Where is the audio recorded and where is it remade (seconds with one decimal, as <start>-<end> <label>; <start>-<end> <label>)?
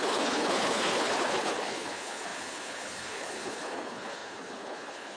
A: 0.0-5.2 remade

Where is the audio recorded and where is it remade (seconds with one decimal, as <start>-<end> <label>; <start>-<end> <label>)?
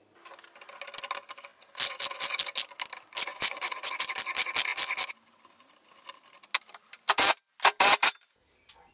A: 0.0-3.3 recorded; 3.3-3.9 remade; 3.9-8.9 recorded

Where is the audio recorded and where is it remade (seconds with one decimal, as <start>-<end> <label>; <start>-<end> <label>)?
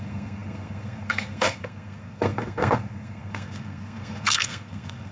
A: 0.0-5.1 remade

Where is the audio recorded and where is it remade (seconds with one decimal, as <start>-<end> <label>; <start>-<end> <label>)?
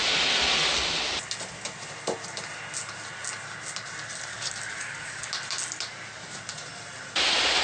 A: 0.0-4.3 recorded; 4.3-5.3 remade; 5.3-5.9 recorded; 5.9-6.4 remade; 6.4-7.6 recorded